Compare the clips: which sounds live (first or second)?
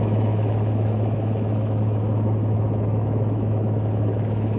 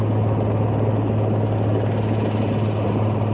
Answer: second